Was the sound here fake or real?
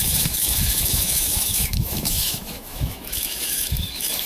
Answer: fake